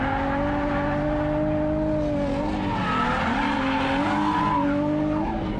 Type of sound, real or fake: real